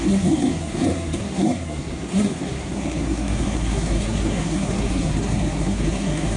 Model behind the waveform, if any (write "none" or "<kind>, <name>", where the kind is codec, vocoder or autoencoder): codec, SNAC